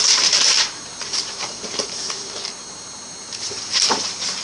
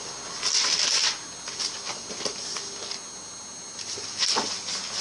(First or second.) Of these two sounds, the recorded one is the second